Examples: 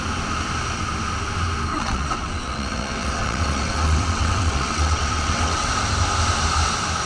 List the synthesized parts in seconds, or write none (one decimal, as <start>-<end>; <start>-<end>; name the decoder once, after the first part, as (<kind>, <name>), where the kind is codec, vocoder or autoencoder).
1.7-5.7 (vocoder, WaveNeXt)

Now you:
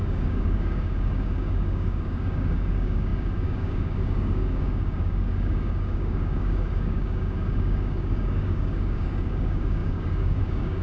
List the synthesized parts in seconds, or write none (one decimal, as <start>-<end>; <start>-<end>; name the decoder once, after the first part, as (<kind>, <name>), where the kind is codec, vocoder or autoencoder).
0.0-10.8 (codec, DAC)

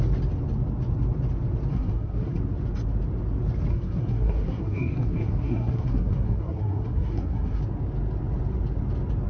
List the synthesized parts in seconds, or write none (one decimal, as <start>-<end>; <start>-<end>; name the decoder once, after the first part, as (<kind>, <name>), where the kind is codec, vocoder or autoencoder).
1.7-2.4 (codec, SNAC); 3.7-7.6

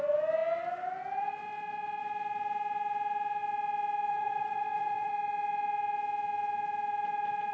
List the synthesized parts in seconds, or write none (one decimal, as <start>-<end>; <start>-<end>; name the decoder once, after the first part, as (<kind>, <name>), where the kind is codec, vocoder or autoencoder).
4.1-5.1 (vocoder, Vocos)

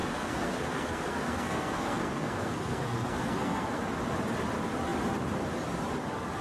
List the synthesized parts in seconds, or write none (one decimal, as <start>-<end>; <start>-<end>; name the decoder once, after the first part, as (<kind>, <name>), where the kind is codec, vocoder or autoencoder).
0.0-3.8 (codec, SNAC)

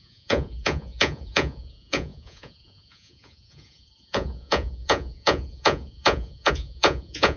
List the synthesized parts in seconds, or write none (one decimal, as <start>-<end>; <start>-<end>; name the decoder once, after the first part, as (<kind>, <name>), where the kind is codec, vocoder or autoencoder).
0.0-7.4 (vocoder, Vocos)